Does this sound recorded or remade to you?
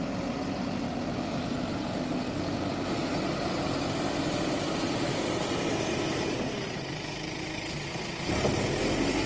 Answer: recorded